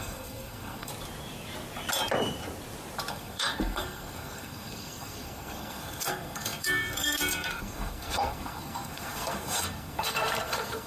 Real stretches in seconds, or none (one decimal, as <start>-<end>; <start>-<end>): 0.9-3.1